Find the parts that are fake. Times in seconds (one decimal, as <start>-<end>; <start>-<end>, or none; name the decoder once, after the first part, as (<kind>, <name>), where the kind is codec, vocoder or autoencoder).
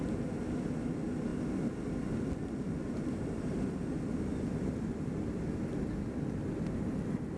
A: none